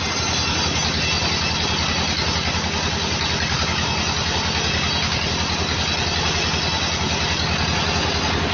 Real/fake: real